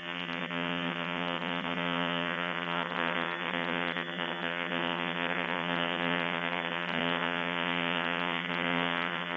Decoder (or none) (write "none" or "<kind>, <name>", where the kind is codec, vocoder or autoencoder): vocoder, HiFi-GAN